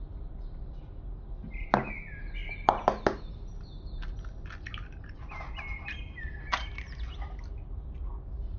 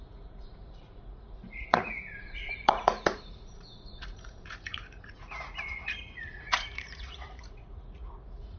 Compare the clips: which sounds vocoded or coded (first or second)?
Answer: second